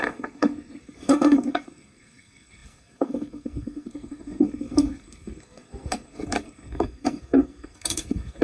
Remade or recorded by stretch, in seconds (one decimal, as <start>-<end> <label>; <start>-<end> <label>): 0.0-8.4 remade